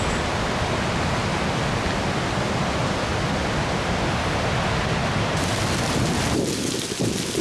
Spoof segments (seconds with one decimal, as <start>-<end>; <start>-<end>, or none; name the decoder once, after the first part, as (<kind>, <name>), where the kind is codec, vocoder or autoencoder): none